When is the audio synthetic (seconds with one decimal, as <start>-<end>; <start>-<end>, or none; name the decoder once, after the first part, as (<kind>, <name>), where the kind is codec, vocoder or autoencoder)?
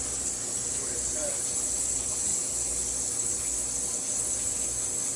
none